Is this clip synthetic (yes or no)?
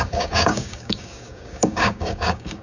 yes